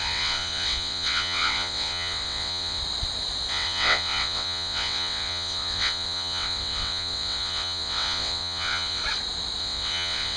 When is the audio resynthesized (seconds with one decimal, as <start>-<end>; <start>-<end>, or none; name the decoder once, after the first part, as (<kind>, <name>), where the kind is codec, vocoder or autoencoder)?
0.0-2.8 (vocoder, WaveNeXt); 3.5-9.0; 9.6-10.4

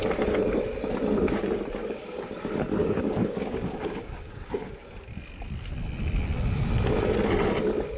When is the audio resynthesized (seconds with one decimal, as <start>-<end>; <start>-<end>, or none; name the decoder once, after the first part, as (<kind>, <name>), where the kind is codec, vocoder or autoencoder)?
1.8-2.3 (codec, DAC); 2.8-4.7

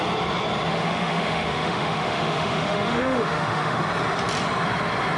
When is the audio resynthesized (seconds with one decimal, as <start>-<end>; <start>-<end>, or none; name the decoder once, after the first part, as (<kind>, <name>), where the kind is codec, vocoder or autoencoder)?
0.7-3.8 (autoencoder, DAC-VAE)

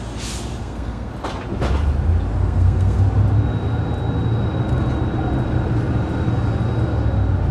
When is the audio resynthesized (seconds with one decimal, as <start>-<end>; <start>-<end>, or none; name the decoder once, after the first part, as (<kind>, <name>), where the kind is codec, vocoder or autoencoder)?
0.6-1.1 (codec, SNAC); 2.4-3.0